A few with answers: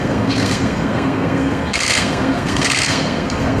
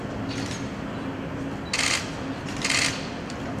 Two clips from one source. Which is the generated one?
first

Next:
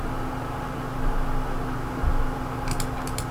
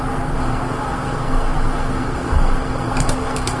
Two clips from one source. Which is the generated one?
second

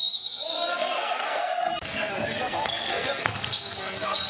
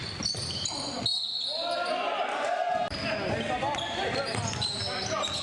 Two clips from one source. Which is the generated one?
first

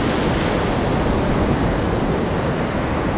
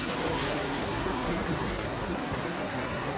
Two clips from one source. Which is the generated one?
second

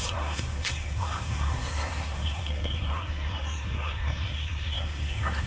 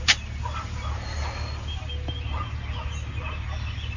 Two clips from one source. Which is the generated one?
first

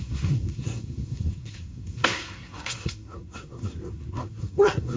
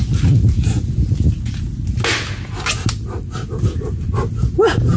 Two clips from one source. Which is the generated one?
first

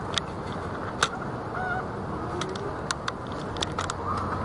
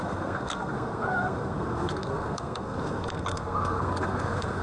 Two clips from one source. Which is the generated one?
second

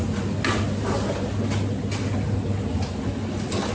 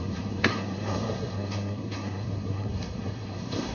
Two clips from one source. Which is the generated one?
second